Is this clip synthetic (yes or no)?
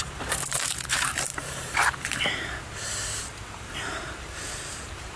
yes